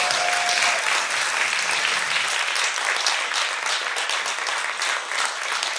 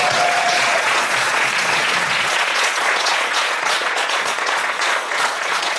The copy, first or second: second